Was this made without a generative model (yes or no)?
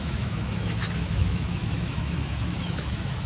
no